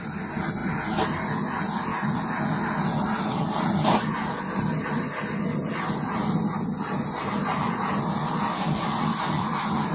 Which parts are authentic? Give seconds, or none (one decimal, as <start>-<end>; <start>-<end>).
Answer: 0.0-9.9